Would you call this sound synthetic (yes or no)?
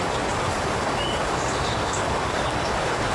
yes